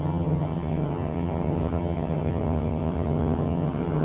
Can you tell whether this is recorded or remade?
remade